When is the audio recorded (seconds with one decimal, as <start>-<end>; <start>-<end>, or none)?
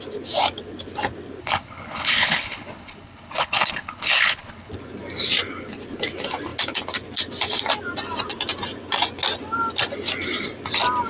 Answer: 0.0-1.4; 4.7-11.1